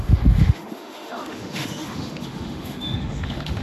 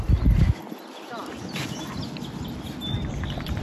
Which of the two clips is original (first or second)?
second